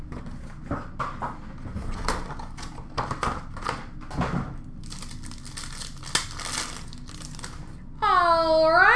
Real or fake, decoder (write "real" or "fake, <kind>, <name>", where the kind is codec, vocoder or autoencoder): real